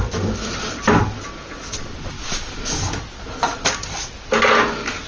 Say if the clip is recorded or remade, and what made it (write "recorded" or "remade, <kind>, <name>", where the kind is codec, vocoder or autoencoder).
recorded